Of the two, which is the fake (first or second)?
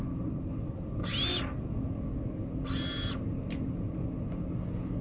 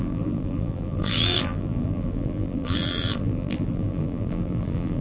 second